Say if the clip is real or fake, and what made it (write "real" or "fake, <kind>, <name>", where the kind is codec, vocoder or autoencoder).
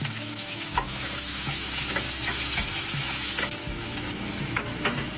fake, autoencoder, DAC-VAE